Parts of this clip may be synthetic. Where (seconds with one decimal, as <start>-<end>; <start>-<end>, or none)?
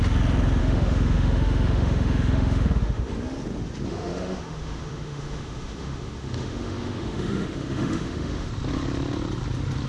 0.6-3.1; 3.9-8.5